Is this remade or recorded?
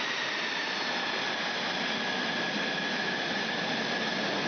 recorded